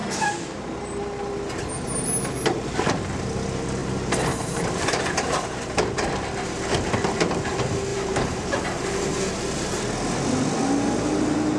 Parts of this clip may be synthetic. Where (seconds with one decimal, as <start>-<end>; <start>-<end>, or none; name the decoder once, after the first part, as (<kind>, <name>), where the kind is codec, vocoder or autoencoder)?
3.8-5.6 (vocoder, BigVGAN v2); 7.9-9.8